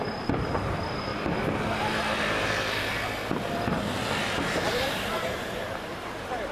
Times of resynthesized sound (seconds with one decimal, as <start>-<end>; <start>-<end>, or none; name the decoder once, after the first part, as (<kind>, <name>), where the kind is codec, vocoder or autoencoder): 0.0-1.1 (vocoder, BigVGAN v2); 4.2-6.5